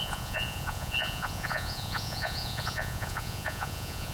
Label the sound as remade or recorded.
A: remade